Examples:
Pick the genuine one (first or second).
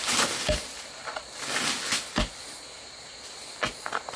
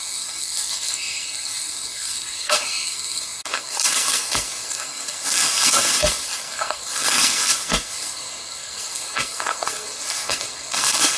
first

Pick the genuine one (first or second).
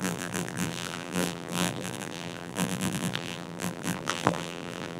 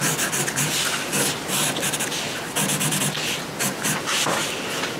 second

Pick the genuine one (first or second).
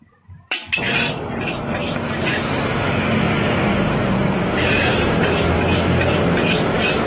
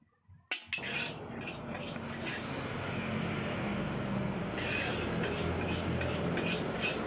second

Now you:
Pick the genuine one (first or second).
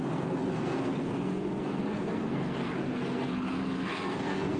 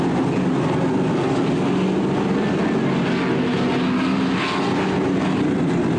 second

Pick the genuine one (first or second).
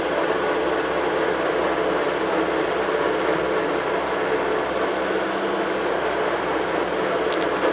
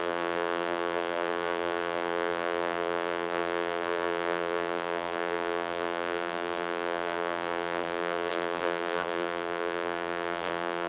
first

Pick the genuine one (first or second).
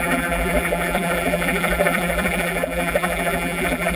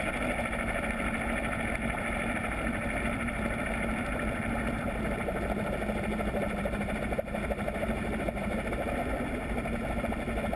second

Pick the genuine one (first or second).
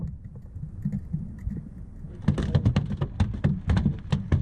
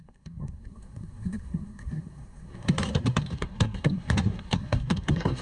first